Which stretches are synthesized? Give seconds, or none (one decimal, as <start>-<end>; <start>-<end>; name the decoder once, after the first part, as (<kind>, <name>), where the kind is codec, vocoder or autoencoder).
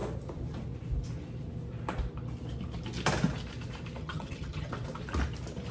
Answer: 4.0-4.7 (vocoder, HiFi-GAN)